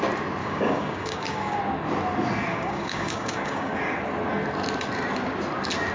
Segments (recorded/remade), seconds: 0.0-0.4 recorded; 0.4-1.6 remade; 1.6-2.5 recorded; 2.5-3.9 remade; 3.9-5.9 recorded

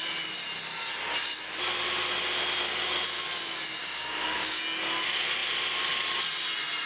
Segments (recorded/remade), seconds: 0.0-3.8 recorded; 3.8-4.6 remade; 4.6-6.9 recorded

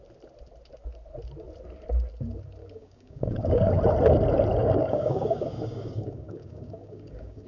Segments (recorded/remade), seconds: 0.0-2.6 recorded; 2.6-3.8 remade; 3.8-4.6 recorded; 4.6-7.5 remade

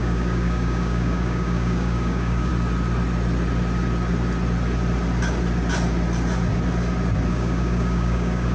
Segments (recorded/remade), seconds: 0.0-2.5 remade; 2.5-7.3 recorded; 7.3-8.5 remade

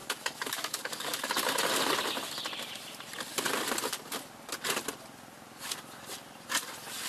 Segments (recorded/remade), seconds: 0.0-1.3 remade; 1.3-7.1 recorded